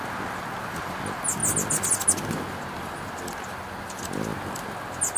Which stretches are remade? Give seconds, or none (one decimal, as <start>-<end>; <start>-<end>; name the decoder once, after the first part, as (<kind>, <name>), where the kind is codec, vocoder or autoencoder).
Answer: none